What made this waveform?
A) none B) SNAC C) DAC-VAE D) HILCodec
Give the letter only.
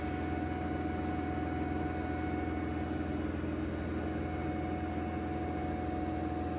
A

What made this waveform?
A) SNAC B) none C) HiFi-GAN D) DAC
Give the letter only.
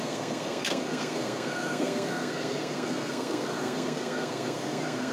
A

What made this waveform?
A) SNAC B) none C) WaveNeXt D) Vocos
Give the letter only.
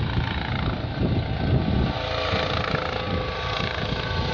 B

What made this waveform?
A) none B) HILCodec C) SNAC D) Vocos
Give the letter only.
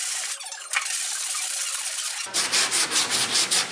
A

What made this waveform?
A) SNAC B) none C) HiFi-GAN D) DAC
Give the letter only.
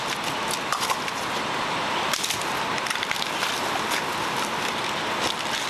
B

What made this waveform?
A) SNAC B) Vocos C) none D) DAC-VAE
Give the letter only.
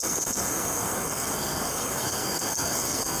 A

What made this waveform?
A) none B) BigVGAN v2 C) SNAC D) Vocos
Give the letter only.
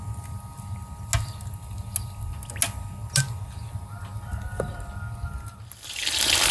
A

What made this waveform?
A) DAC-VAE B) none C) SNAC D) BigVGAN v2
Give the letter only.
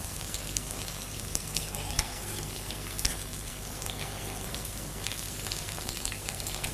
C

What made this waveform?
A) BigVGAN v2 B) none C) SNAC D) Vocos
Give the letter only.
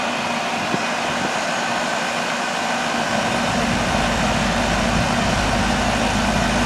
B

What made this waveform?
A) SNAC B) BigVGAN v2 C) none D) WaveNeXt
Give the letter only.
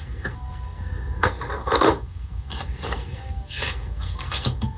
A